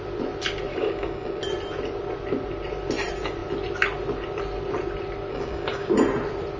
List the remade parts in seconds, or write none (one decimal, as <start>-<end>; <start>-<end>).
0.7-1.4; 5.3-5.9

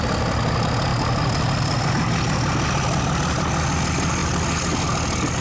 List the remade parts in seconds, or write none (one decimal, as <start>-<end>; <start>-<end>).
none